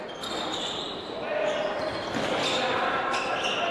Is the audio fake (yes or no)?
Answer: no